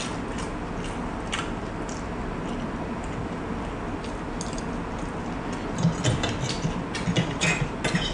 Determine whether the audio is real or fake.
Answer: real